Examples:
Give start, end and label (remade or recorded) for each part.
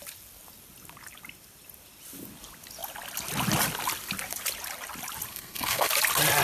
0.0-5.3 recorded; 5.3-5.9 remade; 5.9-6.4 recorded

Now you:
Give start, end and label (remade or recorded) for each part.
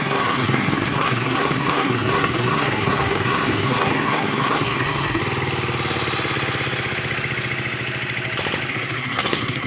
0.0-5.2 remade; 5.2-8.7 recorded; 8.7-9.7 remade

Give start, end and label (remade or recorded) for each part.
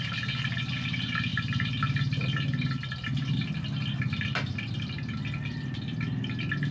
0.0-6.7 recorded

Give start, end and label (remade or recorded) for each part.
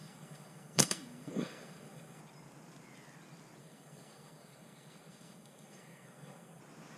0.0-2.2 remade; 2.2-3.6 recorded; 3.6-6.6 remade; 6.6-7.0 recorded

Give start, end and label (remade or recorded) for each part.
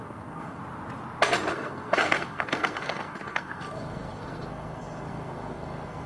0.0-0.6 remade; 0.6-1.5 recorded; 1.5-6.1 remade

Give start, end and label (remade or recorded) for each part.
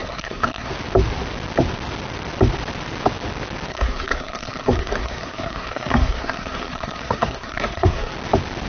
0.0-0.7 remade; 0.7-3.7 recorded; 3.7-8.1 remade; 8.1-8.7 recorded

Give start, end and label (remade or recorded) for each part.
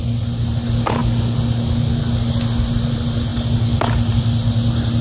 0.0-5.0 recorded